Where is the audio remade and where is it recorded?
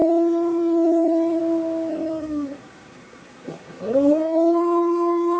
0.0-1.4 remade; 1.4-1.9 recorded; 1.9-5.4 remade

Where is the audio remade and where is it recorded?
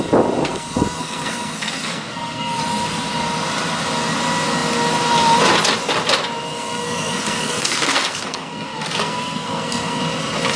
0.0-0.4 recorded; 0.4-2.6 remade; 2.6-6.5 recorded; 6.5-10.0 remade; 10.0-10.6 recorded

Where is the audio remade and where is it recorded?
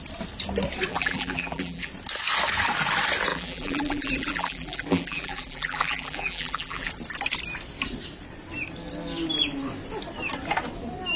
0.0-0.9 recorded; 0.9-1.9 remade; 1.9-3.3 recorded; 3.3-6.9 remade; 6.9-11.2 recorded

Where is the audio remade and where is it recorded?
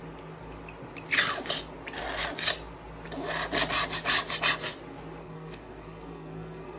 0.0-5.2 recorded; 5.2-6.8 remade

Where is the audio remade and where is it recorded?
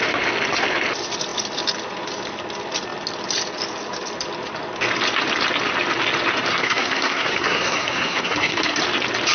0.0-6.5 recorded; 6.5-8.8 remade; 8.8-9.3 recorded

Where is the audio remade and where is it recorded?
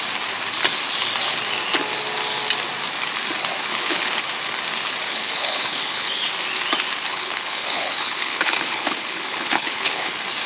0.0-3.7 recorded; 3.7-4.2 remade; 4.2-5.1 recorded; 5.1-6.2 remade; 6.2-7.1 recorded; 7.1-10.1 remade; 10.1-10.5 recorded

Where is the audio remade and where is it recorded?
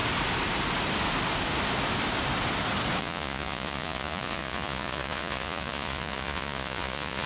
0.0-3.0 recorded; 3.0-7.3 remade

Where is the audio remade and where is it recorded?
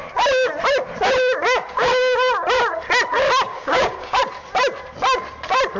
0.0-3.5 recorded; 3.5-4.2 remade; 4.2-5.8 recorded